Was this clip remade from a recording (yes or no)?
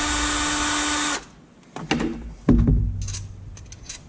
no